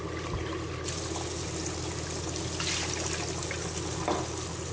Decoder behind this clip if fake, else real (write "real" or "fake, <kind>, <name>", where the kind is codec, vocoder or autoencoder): real